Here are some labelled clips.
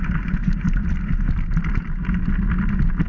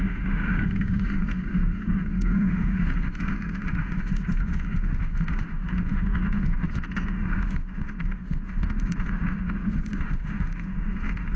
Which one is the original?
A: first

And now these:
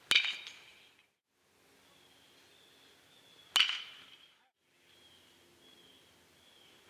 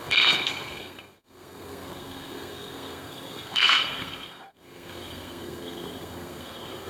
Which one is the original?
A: first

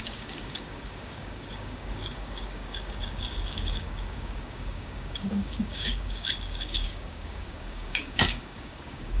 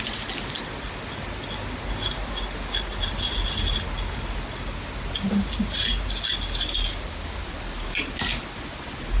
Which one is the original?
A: second